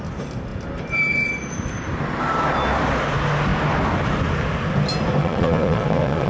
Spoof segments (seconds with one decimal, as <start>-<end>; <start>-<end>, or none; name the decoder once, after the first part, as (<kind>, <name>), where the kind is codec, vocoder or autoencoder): 5.2-6.3 (vocoder, Vocos)